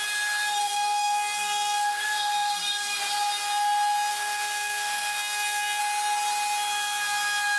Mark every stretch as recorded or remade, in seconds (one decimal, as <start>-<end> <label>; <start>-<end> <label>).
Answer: 0.0-0.6 recorded; 0.6-3.0 remade; 3.0-4.1 recorded; 4.1-5.8 remade; 5.8-7.6 recorded